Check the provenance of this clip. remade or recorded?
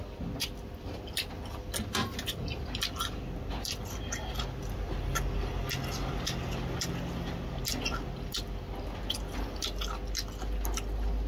recorded